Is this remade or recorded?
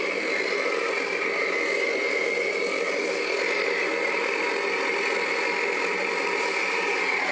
recorded